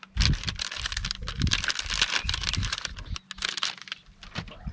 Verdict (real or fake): real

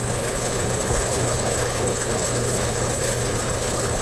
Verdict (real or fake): fake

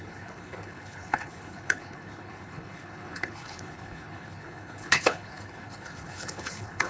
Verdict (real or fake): fake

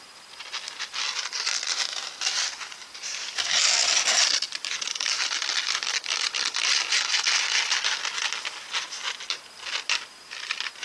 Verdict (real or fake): real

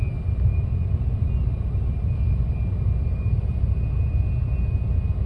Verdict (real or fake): real